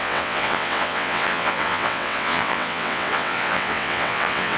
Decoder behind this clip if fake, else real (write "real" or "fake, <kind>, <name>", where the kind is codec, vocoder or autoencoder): fake, vocoder, WaveNeXt